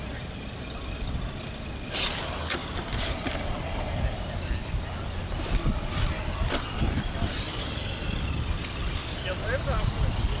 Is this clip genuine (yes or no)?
yes